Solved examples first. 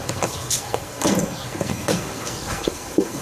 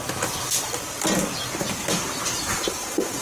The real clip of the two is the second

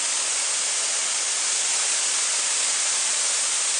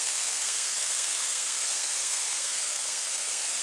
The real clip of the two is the first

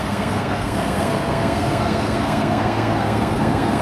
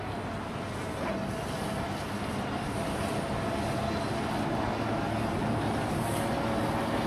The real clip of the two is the second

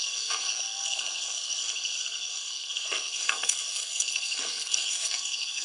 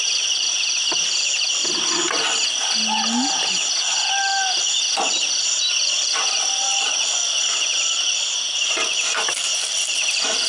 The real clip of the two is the second